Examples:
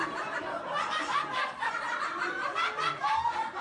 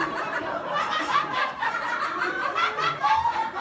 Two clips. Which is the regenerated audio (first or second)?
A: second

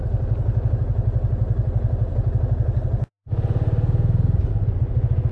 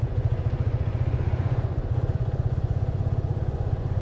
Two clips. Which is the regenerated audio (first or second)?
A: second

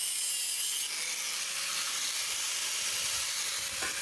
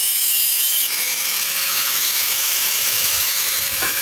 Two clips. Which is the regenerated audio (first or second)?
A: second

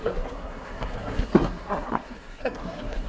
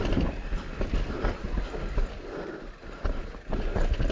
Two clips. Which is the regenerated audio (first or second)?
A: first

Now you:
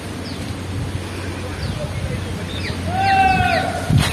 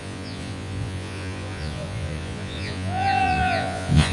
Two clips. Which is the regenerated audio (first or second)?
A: second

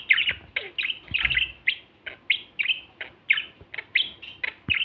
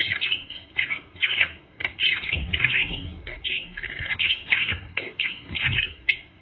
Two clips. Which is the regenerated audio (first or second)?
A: second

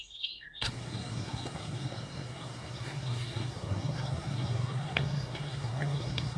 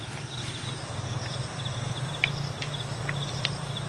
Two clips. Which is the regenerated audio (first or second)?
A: first